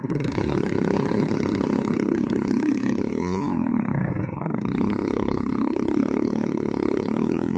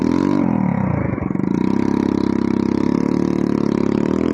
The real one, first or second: second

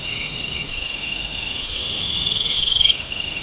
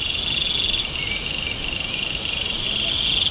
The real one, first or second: second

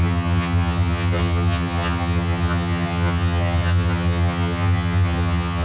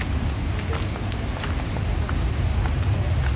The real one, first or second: second